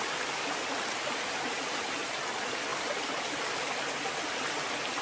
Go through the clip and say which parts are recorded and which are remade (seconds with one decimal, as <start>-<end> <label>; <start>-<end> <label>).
0.0-5.0 recorded

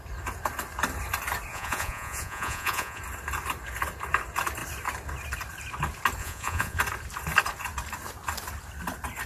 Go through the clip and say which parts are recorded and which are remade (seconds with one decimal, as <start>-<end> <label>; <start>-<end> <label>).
0.0-1.5 recorded; 1.5-3.0 remade; 3.0-6.2 recorded; 6.2-6.8 remade; 6.8-9.3 recorded

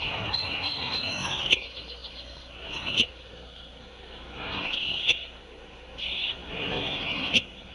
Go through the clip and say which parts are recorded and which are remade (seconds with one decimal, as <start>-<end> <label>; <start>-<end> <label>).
0.0-7.7 remade

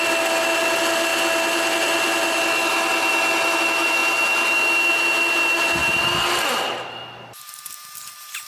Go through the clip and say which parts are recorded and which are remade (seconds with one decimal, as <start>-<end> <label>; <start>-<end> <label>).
0.0-8.5 recorded

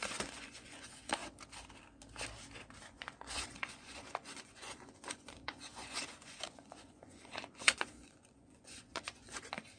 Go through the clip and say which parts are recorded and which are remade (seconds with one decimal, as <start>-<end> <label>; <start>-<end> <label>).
0.0-1.2 remade; 1.2-2.9 recorded; 2.9-9.8 remade

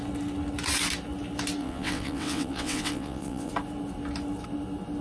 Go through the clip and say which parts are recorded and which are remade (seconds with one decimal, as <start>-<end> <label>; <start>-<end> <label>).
0.0-1.6 recorded; 1.6-3.5 remade; 3.5-5.0 recorded

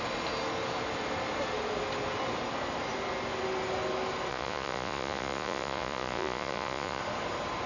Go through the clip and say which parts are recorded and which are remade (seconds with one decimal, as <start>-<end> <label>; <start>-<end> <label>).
0.0-4.3 recorded; 4.3-7.0 remade; 7.0-7.7 recorded